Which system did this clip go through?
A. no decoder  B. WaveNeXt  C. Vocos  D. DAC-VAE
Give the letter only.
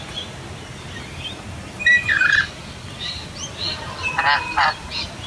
A